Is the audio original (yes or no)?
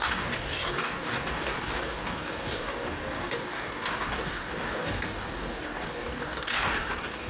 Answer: no